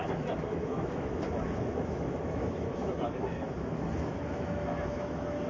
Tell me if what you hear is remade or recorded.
remade